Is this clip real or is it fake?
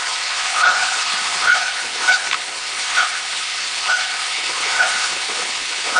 fake